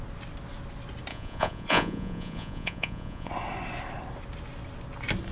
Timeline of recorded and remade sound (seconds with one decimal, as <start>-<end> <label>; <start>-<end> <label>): 0.0-1.1 recorded; 1.1-3.3 remade; 3.3-5.3 recorded